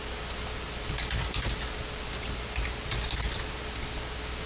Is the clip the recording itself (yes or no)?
yes